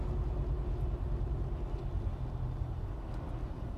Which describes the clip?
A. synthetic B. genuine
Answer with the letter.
B